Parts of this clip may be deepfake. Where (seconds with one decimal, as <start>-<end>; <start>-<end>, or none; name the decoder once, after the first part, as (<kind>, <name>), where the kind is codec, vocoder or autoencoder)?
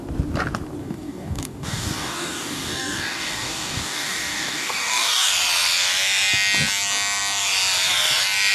0.8-5.3 (codec, DAC)